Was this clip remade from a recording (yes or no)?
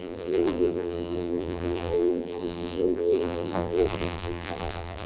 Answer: yes